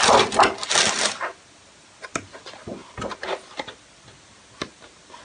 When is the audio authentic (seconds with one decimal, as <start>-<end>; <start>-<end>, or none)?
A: 0.0-2.8; 4.8-5.2